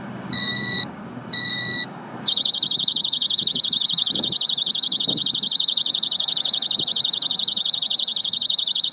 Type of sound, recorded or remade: remade